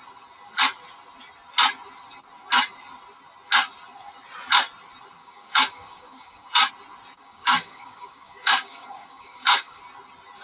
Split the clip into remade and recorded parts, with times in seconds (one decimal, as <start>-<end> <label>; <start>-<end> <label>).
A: 0.0-5.2 recorded; 5.2-6.7 remade; 6.7-7.2 recorded; 7.2-9.8 remade; 9.8-10.4 recorded